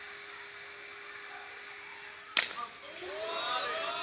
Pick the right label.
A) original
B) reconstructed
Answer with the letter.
A